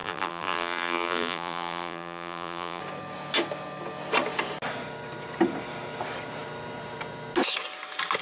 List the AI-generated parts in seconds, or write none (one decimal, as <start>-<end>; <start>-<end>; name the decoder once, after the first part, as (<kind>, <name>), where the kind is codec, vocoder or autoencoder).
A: 0.0-2.8 (vocoder, BigVGAN v2)